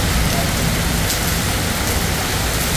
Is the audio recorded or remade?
recorded